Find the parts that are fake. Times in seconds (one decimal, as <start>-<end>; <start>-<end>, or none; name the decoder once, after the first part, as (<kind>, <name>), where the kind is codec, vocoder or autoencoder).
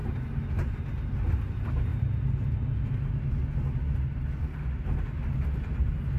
none